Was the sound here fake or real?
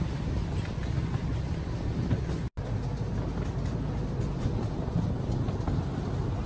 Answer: real